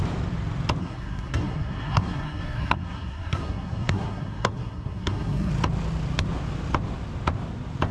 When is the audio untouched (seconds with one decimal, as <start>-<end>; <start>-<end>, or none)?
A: 0.0-0.8; 5.5-7.9